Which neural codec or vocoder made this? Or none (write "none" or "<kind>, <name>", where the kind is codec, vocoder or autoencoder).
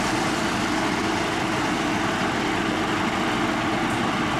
none